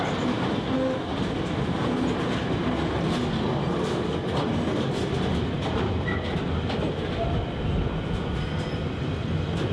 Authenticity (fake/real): real